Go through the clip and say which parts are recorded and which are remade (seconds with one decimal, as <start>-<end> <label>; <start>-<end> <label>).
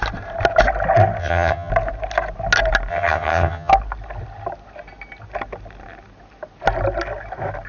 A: 0.0-1.2 recorded; 1.2-1.7 remade; 1.7-2.9 recorded; 2.9-3.7 remade; 3.7-7.7 recorded